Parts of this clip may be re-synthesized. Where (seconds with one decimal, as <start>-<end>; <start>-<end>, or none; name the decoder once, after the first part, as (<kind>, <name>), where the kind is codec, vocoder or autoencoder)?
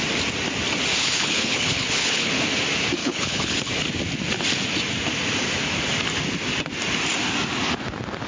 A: 0.9-2.3 (codec, HILCodec); 3.0-3.7